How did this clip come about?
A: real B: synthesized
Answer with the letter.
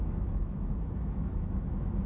B